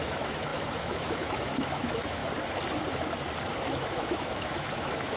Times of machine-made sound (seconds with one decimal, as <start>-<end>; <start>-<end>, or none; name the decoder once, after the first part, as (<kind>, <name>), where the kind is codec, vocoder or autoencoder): 0.0-2.2 (autoencoder, DAC-VAE); 3.6-5.2